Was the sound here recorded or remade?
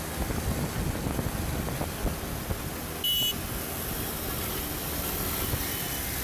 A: recorded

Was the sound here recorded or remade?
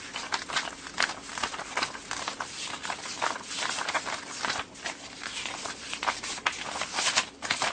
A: recorded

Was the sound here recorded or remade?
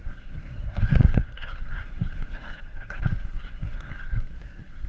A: remade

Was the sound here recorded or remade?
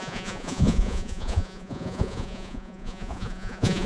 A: remade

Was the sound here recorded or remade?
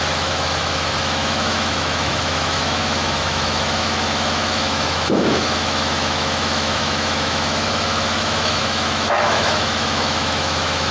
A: remade